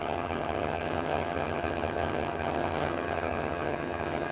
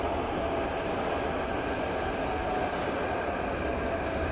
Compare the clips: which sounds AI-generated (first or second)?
first